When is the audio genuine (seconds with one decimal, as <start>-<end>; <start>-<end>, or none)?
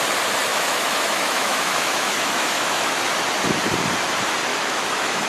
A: 0.0-0.5; 3.0-4.5